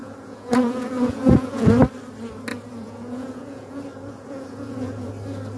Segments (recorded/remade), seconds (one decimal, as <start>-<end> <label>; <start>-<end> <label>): 0.0-1.7 remade; 1.7-2.5 recorded; 2.5-5.1 remade; 5.1-5.6 recorded